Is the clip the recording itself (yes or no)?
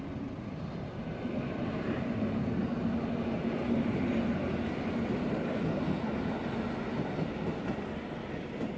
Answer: yes